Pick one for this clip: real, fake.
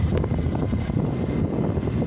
real